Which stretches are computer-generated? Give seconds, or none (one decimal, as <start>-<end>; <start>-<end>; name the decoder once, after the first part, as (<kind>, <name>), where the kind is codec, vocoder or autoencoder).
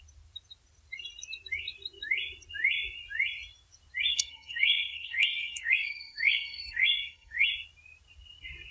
4.1-7.5 (codec, SNAC)